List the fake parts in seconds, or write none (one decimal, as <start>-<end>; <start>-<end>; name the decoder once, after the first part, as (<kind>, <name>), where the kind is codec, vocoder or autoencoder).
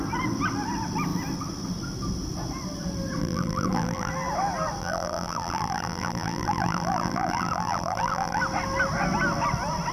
3.2-4.1 (vocoder, BigVGAN v2); 4.8-8.4